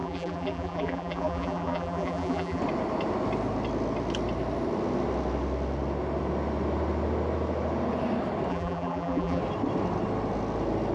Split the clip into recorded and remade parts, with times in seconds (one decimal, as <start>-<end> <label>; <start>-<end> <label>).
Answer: 0.0-2.6 remade; 2.6-8.5 recorded; 8.5-9.4 remade; 9.4-10.9 recorded